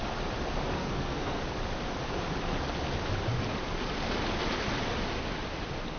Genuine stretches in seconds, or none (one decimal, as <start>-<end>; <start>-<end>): 0.0-0.8; 1.4-6.0